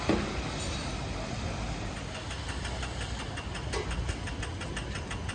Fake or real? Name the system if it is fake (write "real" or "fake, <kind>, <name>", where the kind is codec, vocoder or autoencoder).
real